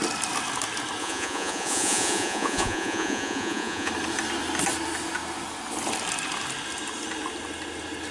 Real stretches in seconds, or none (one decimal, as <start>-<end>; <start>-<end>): 0.0-1.0; 3.9-8.1